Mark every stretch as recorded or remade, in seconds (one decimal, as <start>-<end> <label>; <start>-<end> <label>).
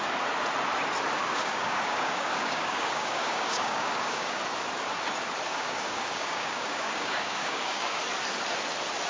0.0-1.2 recorded; 1.2-4.4 remade; 4.4-5.5 recorded; 5.5-8.0 remade; 8.0-9.1 recorded